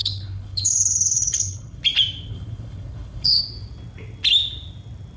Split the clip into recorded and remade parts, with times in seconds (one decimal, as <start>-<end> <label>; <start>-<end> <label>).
0.0-1.8 remade; 1.8-2.3 recorded; 2.3-3.4 remade; 3.4-5.2 recorded